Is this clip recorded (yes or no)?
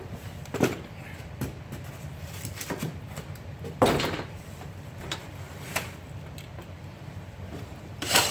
no